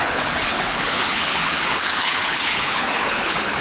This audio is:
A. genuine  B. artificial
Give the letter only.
B